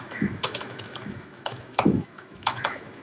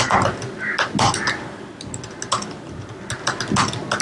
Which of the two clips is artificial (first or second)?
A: first